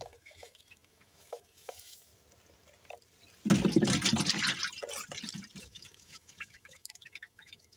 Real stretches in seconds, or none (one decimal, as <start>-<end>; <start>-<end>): 2.1-5.6